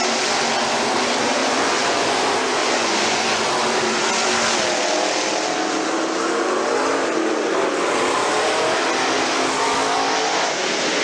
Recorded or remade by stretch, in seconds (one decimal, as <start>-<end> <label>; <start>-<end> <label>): 0.0-1.4 recorded; 1.4-2.2 remade; 2.2-2.6 recorded; 2.6-3.5 remade; 3.5-11.0 recorded